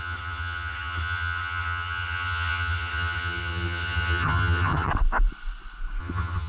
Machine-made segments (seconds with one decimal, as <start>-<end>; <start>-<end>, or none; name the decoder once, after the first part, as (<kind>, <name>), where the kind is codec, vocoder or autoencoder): 0.0-4.9 (vocoder, HiFi-GAN); 6.0-6.5